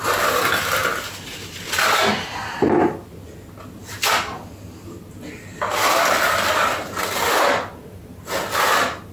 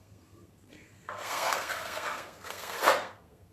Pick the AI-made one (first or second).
second